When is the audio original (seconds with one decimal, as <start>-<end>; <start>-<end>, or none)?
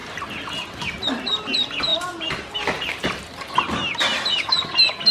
0.0-4.1; 4.6-5.1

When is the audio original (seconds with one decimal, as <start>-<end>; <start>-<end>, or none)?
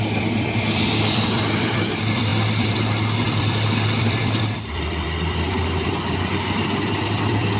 none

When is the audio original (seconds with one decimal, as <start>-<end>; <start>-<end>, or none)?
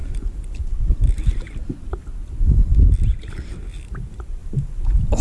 0.6-4.4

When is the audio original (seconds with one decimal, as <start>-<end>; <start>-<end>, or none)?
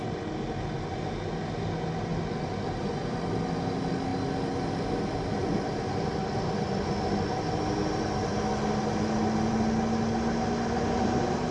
0.0-11.5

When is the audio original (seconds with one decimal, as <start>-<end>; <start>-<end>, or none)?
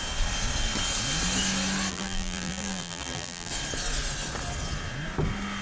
0.0-1.9; 3.5-5.6